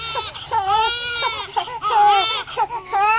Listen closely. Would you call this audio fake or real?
real